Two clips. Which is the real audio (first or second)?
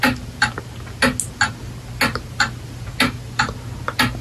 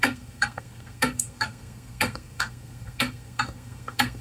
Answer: first